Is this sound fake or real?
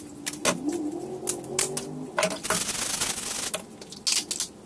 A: real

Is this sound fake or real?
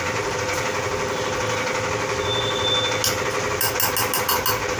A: real